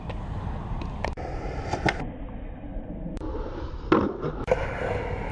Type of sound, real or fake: real